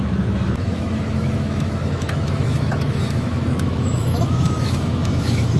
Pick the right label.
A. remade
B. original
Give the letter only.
A